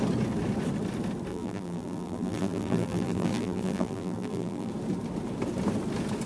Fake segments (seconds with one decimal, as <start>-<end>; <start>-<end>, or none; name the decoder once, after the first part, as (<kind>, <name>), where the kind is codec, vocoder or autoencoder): 1.3-4.7 (vocoder, BigVGAN v2)

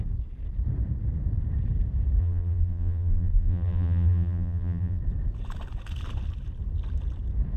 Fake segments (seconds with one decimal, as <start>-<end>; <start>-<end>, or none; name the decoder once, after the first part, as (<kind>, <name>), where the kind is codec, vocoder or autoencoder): 2.2-5.0 (vocoder, BigVGAN v2)